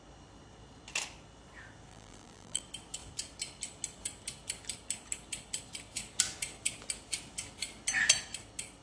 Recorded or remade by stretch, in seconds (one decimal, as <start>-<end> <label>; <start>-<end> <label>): 0.0-1.9 recorded; 1.9-2.6 remade; 2.6-8.8 recorded